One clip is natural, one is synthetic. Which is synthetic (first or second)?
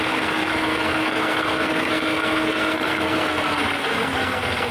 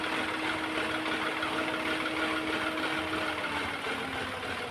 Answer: first